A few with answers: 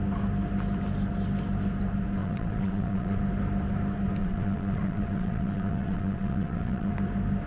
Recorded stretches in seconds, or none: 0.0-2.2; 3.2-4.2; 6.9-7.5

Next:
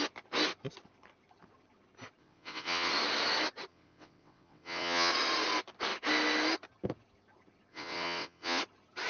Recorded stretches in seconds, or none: 0.0-2.2; 2.9-3.7; 5.1-7.7; 8.6-9.1